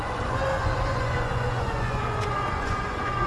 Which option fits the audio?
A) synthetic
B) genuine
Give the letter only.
A